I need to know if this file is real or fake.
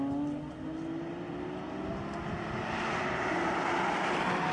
real